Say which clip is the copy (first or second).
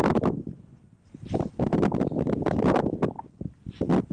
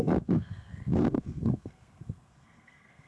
second